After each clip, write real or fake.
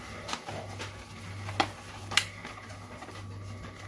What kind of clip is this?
real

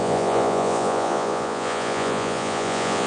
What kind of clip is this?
fake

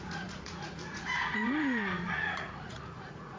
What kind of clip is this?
fake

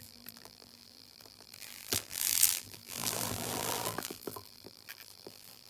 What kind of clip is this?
fake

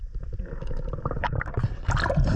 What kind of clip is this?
fake